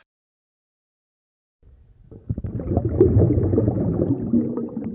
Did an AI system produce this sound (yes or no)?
no